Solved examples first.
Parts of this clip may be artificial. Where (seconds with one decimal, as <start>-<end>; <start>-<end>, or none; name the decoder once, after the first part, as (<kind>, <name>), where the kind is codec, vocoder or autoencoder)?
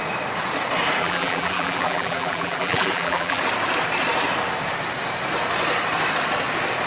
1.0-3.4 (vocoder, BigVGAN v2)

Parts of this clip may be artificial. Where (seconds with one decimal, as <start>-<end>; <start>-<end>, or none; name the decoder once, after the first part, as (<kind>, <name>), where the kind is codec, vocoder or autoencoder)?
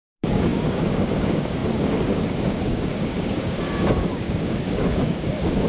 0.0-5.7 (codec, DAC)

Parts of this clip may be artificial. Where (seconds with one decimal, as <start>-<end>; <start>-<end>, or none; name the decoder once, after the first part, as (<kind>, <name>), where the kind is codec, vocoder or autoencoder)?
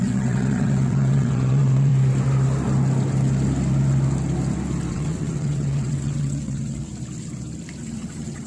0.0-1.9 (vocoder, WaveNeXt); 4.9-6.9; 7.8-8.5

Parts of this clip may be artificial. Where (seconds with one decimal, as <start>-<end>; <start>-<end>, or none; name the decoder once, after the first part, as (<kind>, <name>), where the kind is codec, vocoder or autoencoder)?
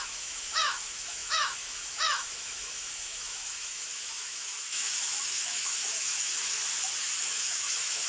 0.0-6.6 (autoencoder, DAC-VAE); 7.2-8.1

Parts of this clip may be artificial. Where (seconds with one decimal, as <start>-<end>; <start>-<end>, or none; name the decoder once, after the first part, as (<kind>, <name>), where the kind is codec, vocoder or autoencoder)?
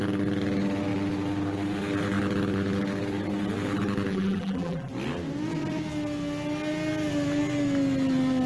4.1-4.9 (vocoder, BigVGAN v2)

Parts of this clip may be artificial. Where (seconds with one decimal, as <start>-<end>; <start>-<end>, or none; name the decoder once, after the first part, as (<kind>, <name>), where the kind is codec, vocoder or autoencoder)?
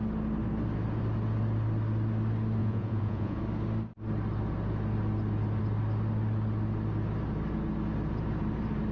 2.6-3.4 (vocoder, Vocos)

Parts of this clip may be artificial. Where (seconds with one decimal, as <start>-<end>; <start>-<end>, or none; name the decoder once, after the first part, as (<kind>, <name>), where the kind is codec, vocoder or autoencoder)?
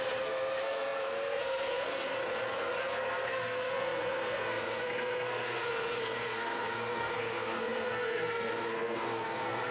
0.0-2.2 (codec, SNAC); 2.8-9.7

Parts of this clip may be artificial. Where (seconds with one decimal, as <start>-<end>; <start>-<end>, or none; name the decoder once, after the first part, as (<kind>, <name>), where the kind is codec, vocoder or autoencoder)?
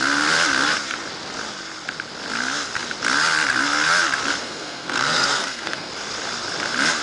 4.4-5.9 (codec, SNAC)